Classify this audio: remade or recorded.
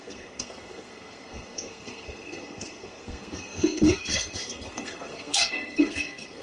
remade